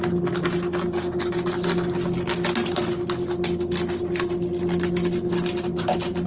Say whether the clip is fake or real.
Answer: real